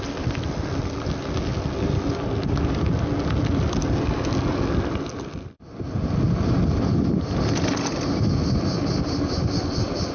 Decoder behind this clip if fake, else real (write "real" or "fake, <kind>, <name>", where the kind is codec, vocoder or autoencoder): real